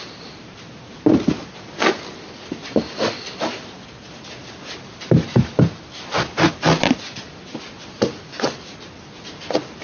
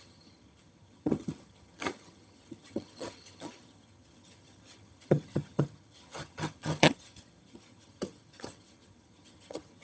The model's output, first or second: second